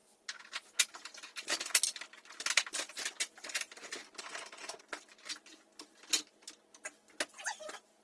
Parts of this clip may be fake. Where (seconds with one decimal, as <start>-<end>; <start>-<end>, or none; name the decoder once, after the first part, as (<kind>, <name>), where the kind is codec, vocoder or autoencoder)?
none